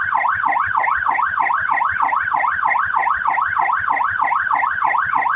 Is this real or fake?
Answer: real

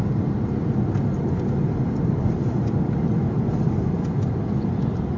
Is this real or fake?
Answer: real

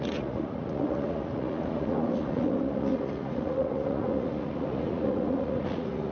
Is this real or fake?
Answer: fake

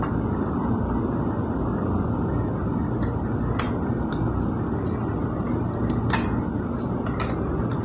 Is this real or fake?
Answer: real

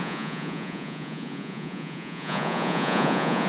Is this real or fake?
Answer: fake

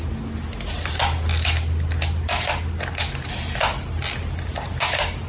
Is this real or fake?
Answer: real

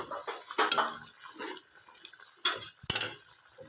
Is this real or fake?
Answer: real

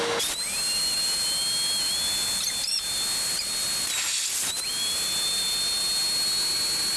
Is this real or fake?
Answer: real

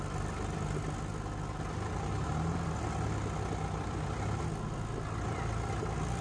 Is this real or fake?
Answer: real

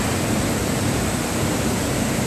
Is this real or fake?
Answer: real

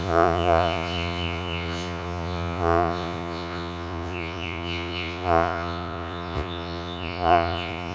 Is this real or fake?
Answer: fake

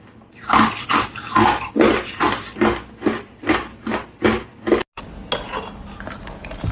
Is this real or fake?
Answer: real